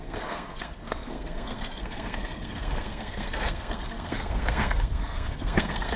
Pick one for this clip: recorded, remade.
remade